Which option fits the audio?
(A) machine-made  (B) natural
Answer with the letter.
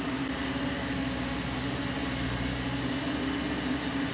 B